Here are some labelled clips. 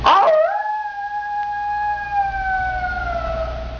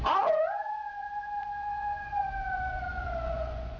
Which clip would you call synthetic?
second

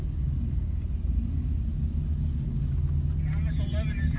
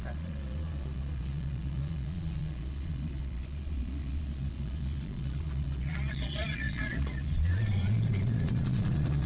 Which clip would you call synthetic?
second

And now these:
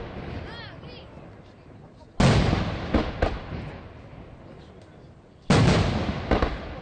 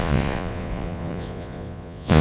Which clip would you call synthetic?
second